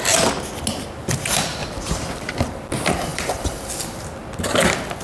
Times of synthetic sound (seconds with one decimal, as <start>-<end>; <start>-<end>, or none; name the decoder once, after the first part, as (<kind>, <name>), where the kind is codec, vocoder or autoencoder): 1.6-2.4 (vocoder, BigVGAN v2); 3.1-3.6